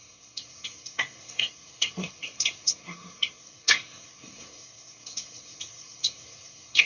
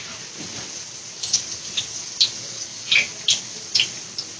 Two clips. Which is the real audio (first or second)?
second